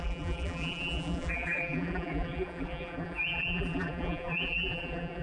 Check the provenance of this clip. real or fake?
fake